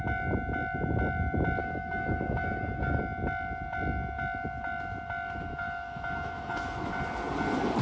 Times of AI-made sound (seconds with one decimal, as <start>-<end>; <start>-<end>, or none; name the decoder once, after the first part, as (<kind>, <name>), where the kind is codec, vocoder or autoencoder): 1.6-3.0 (autoencoder, DAC-VAE); 5.5-6.9